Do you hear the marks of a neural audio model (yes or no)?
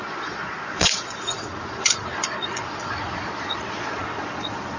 yes